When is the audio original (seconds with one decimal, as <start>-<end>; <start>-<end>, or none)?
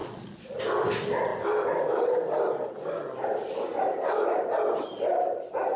0.6-5.8